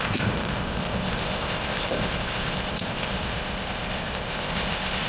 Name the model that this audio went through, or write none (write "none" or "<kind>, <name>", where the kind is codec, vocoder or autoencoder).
codec, ZipCodec